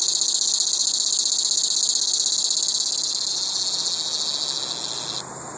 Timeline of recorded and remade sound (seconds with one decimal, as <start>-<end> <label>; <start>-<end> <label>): 0.0-5.6 recorded